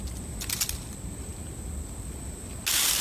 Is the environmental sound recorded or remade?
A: recorded